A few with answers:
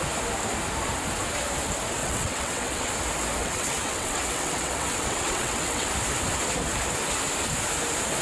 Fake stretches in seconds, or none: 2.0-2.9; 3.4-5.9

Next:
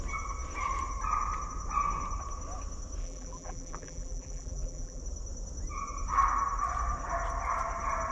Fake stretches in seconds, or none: 3.0-5.0

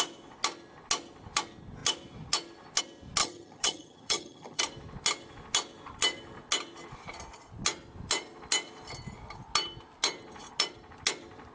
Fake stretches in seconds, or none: 3.2-4.6